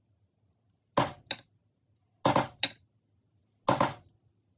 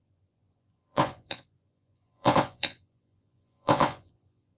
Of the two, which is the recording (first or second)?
first